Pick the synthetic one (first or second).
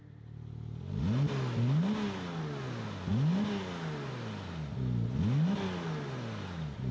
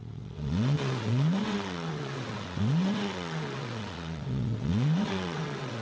second